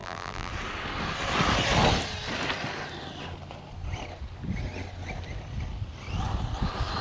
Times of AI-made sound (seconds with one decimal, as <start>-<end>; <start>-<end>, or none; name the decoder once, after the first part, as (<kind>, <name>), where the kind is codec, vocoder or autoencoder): 0.0-0.5 (vocoder, BigVGAN v2)